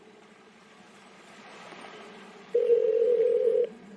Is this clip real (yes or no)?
no